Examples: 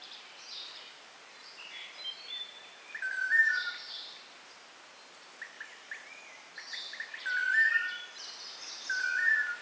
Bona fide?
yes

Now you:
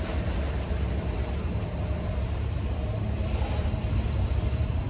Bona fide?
yes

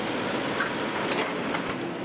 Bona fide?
yes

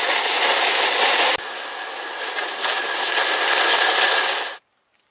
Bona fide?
yes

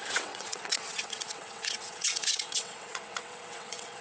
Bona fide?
no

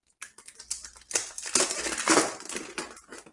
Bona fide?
yes